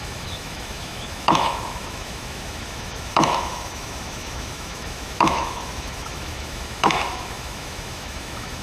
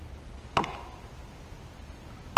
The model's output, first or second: first